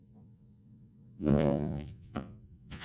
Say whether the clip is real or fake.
fake